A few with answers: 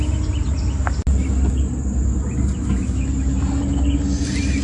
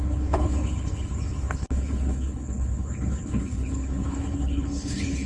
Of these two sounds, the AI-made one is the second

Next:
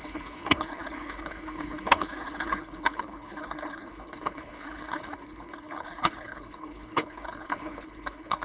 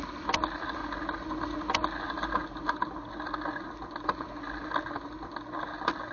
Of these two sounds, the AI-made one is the first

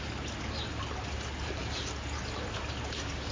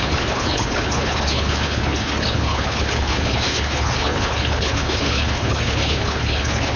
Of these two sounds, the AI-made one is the second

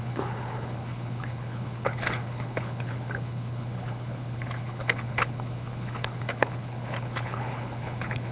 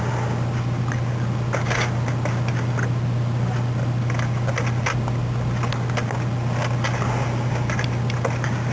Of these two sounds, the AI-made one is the first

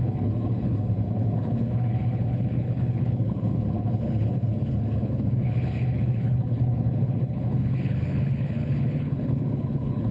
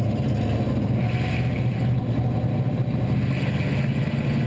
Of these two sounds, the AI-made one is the first